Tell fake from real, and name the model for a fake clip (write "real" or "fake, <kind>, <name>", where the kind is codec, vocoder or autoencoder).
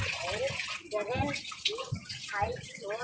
real